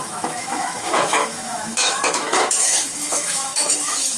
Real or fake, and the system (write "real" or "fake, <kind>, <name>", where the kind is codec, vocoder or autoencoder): fake, autoencoder, DAC-VAE